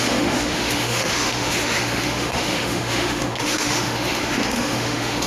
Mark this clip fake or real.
fake